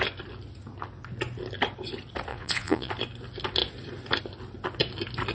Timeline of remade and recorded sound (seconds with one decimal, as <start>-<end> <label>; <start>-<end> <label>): 0.0-2.3 recorded; 2.3-2.9 remade; 2.9-5.3 recorded